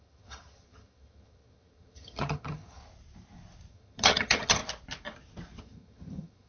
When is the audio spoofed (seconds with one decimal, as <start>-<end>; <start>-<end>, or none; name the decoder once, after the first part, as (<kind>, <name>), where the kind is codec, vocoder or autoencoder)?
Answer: 0.0-2.8 (vocoder, HiFi-GAN); 3.7-4.6; 5.6-6.5